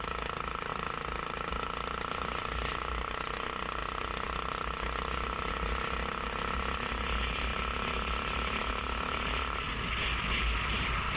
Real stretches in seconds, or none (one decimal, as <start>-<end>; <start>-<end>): 0.0-11.2